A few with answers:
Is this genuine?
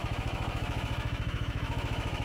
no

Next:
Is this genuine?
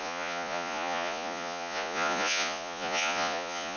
no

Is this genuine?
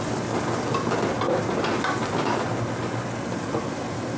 yes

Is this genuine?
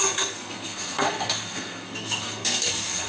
no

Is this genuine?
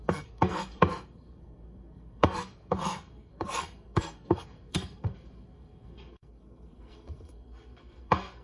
no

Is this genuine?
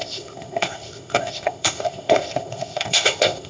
no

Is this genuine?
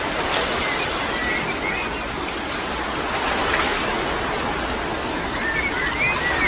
yes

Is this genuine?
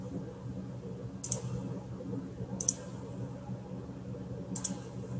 yes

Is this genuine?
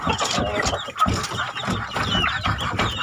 yes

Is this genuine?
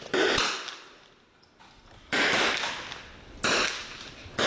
yes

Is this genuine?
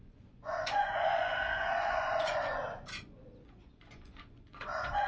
no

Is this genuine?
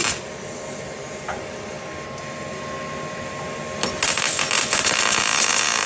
yes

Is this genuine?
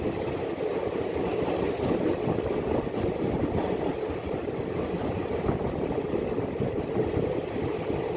yes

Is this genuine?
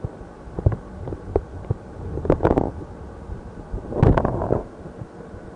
yes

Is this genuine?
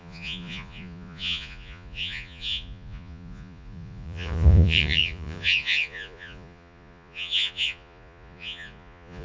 no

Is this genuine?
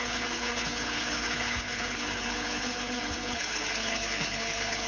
no